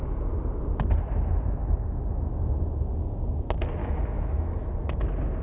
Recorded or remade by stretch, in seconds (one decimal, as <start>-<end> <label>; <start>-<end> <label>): 0.0-3.8 recorded; 3.8-4.7 remade; 4.7-5.4 recorded